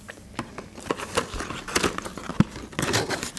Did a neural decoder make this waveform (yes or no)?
no